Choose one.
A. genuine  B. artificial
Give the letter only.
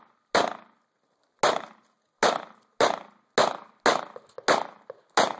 A